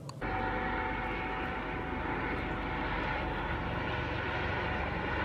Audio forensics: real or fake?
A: real